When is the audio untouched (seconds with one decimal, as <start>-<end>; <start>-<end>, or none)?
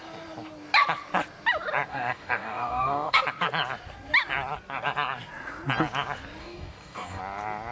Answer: 0.0-1.9; 3.2-6.4; 7.2-7.7